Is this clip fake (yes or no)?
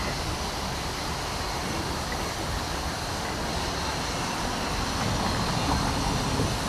no